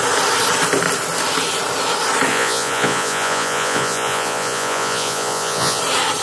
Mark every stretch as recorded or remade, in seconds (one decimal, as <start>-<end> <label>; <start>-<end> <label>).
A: 0.0-2.3 recorded; 2.3-5.8 remade; 5.8-6.2 recorded